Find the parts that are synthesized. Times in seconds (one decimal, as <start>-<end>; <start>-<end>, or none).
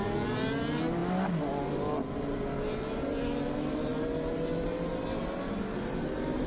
none